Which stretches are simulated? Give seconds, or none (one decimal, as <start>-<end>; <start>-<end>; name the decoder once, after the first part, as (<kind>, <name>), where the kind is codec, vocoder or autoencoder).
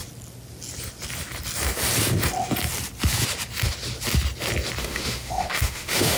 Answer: 4.8-6.2 (autoencoder, DAC-VAE)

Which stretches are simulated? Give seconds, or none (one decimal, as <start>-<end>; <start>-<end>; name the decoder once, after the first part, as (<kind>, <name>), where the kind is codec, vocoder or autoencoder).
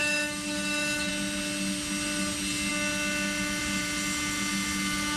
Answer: 0.0-1.1 (autoencoder, DAC-VAE)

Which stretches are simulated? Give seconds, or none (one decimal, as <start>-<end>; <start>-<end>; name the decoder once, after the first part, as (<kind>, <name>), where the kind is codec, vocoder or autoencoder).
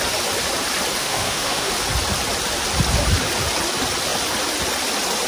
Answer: 1.0-1.7 (autoencoder, DAC-VAE)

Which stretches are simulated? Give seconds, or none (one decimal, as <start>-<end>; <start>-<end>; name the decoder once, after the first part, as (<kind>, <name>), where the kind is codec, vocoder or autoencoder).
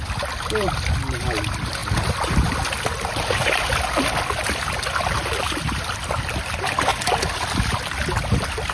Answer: none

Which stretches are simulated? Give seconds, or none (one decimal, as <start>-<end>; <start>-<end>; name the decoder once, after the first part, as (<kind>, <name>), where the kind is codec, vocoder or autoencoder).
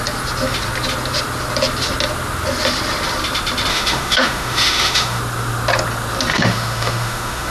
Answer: 3.7-5.2 (autoencoder, DAC-VAE); 6.3-7.5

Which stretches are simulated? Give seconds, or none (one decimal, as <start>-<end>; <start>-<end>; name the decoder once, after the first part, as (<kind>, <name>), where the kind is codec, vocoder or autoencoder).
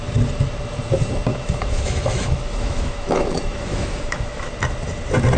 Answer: 1.3-4.5 (autoencoder, DAC-VAE)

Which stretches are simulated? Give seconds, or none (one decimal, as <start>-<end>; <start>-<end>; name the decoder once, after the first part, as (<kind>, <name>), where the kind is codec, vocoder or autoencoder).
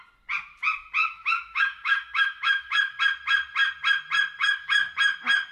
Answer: 1.0-3.0 (autoencoder, DAC-VAE); 4.4-4.9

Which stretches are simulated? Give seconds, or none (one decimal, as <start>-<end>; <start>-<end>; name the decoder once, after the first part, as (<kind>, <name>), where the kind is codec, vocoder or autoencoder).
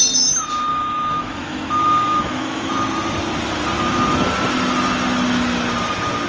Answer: 0.7-2.7 (autoencoder, DAC-VAE)